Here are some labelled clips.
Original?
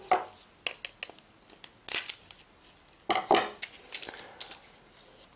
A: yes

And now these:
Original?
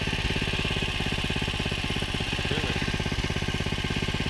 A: yes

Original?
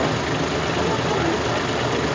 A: yes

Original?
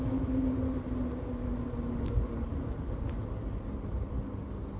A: yes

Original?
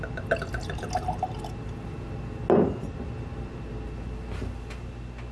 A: yes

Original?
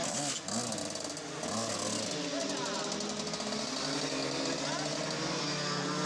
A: yes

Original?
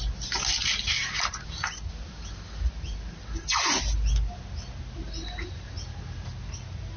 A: yes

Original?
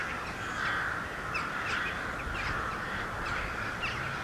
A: yes